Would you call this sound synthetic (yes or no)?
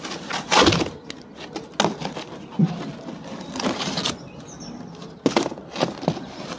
no